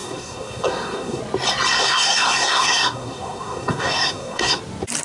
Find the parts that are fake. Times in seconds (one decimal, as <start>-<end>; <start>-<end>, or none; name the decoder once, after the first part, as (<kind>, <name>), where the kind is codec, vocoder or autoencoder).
0.0-1.2 (codec, SNAC); 1.7-4.6